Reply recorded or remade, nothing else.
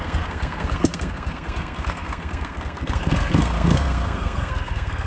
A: remade